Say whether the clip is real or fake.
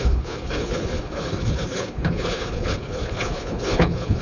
fake